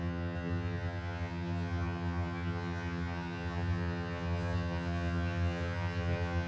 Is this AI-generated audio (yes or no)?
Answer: yes